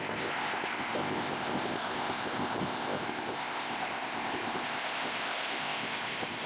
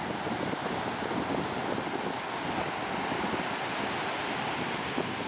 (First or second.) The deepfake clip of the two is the first